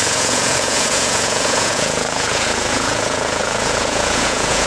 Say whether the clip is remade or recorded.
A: remade